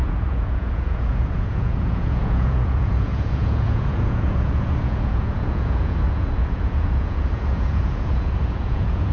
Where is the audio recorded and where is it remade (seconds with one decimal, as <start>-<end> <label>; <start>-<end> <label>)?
0.0-9.1 remade